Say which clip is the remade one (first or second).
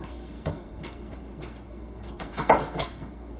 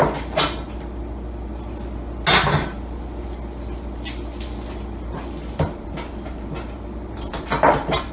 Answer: first